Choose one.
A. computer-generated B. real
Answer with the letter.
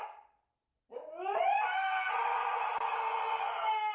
B